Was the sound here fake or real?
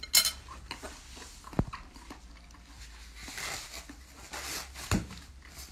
real